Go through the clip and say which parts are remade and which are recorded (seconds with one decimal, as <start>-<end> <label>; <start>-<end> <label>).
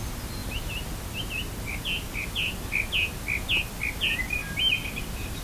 0.0-5.4 recorded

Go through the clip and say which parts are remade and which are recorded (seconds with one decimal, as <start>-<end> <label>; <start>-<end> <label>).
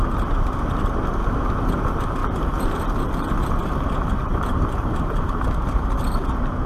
0.0-1.2 recorded; 1.2-1.8 remade; 1.8-4.3 recorded; 4.3-6.0 remade; 6.0-6.7 recorded